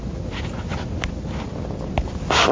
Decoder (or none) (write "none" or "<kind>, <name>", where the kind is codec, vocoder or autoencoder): none